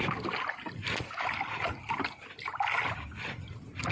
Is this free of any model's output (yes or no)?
yes